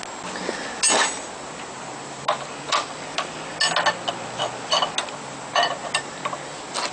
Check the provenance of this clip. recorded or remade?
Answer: recorded